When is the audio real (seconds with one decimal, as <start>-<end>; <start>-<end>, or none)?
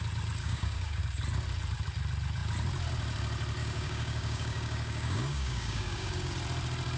0.0-0.4; 1.0-3.6; 6.3-7.0